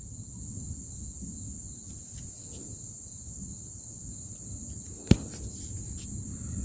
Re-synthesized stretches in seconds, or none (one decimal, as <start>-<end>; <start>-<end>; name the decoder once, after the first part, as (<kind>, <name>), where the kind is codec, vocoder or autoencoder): 1.6-5.6 (vocoder, BigVGAN v2)